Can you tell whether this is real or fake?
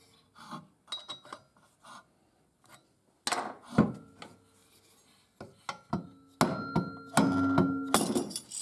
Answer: real